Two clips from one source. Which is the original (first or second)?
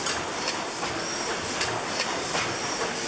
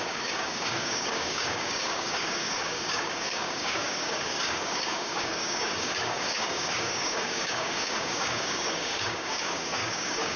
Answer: first